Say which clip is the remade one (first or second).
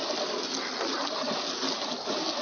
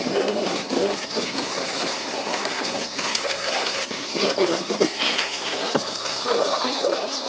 second